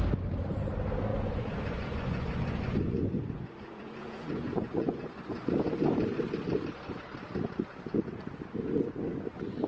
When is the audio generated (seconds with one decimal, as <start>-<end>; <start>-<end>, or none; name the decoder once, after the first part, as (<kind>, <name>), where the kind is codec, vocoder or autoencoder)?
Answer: 1.1-5.5 (vocoder, Vocos)